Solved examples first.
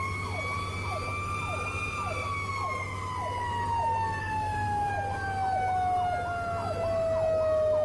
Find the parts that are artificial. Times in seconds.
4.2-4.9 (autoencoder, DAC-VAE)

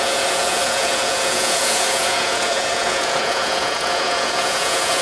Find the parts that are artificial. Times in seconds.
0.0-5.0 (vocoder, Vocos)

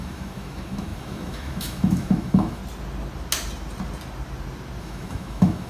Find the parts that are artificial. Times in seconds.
0.0-2.6 (autoencoder, DAC-VAE); 4.8-5.7

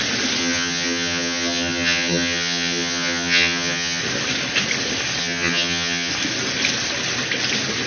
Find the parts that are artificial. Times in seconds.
0.4-4.0 (vocoder, HiFi-GAN); 5.2-6.1

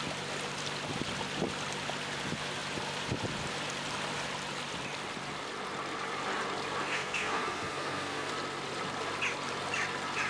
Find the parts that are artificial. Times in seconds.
6.8-8.3 (codec, SNAC)

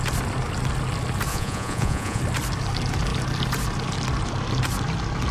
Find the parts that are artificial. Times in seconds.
1.3-2.2 (vocoder, Vocos)

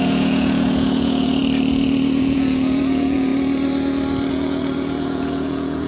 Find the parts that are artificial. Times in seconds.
0.0-1.4 (vocoder, Vocos); 2.2-3.3; 4.3-5.9

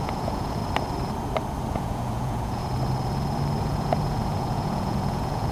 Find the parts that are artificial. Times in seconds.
0.0-0.6 (vocoder, Vocos); 1.7-2.6; 3.6-5.5